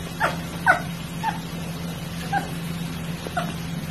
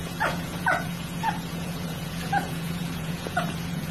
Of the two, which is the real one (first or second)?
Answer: first